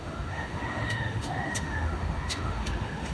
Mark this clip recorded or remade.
remade